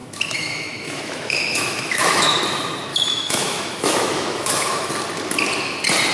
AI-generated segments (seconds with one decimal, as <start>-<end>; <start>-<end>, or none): 0.0-2.4; 2.9-4.9